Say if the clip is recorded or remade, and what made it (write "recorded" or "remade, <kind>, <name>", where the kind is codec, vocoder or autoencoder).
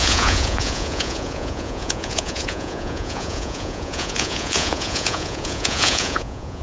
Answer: remade, vocoder, Vocos